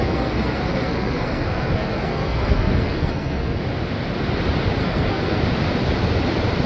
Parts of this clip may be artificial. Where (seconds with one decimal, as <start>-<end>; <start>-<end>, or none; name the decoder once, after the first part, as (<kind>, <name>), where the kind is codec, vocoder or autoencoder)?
0.0-3.6 (codec, SNAC); 4.8-5.4